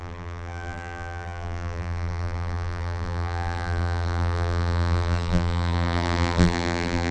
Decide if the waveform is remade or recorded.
remade